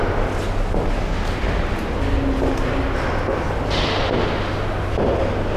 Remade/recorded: recorded